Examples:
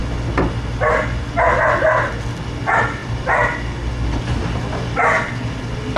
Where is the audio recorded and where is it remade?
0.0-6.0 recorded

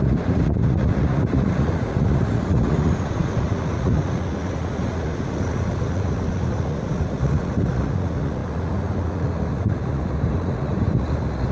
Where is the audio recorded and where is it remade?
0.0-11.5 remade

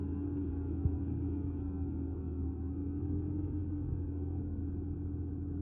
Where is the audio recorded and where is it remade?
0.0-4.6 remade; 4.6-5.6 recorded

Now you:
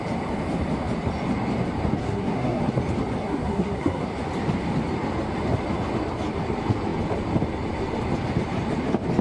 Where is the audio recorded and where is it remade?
0.0-2.0 recorded; 2.0-2.6 remade; 2.6-3.2 recorded; 3.2-4.1 remade; 4.1-9.2 recorded